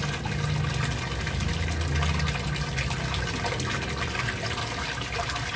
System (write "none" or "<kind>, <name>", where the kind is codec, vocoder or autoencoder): none